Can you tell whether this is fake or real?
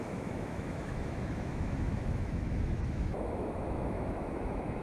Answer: fake